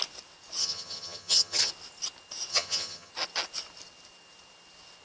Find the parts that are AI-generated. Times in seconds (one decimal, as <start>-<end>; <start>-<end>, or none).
0.6-1.7; 2.5-3.1